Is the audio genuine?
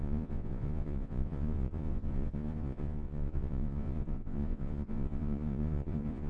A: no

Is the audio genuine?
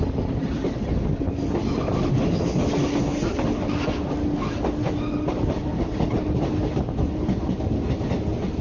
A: yes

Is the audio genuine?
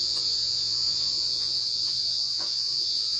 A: no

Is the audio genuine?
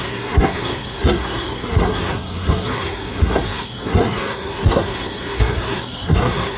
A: no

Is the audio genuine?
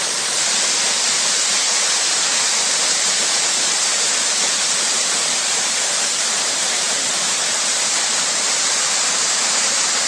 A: no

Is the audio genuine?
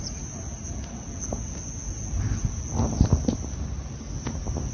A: yes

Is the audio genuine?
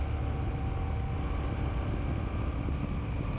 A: yes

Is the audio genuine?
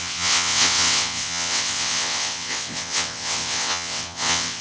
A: no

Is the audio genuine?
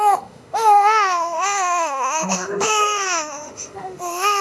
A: no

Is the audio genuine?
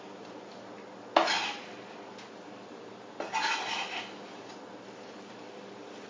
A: yes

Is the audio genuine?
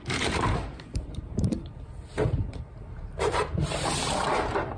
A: no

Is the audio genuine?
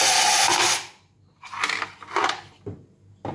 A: yes